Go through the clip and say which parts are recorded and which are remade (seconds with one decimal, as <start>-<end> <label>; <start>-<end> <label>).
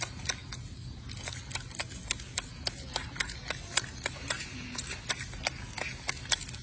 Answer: 0.0-6.6 recorded